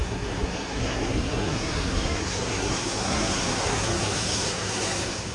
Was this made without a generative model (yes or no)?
no